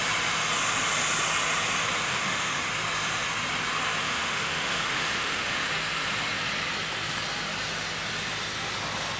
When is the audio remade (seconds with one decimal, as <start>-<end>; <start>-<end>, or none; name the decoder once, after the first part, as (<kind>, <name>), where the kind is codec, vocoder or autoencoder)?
2.1-2.7 (autoencoder, DAC-VAE); 4.0-5.7